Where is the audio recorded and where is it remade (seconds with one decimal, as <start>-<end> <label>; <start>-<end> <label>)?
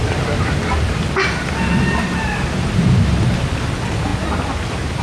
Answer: 0.0-4.1 remade; 4.1-5.0 recorded